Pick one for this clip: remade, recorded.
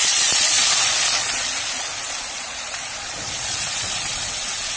remade